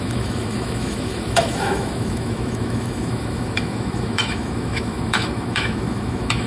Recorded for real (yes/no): no